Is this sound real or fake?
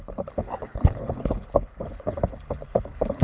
fake